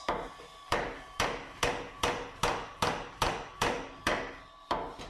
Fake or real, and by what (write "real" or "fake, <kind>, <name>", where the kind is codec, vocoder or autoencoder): real